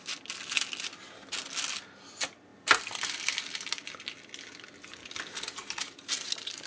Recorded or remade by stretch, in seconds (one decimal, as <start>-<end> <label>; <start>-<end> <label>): 0.0-6.7 recorded